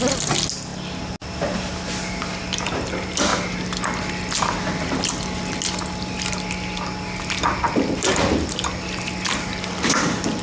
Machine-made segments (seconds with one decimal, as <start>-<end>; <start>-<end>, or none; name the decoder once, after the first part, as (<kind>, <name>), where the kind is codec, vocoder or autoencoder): none